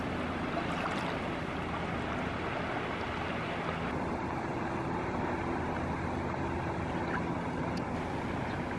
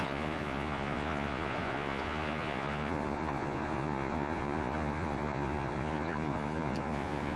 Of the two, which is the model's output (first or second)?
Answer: second